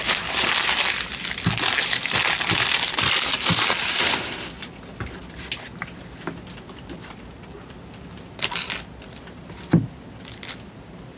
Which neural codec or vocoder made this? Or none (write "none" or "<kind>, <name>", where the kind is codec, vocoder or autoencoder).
none